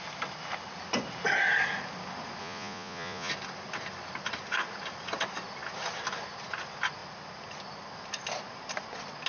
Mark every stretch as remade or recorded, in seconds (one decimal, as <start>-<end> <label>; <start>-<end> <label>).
0.0-2.4 recorded; 2.4-3.3 remade; 3.3-9.3 recorded